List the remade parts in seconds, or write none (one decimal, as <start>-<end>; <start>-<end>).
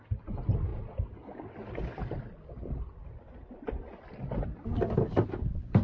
none